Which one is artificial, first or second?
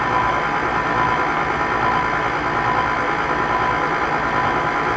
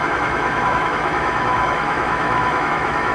second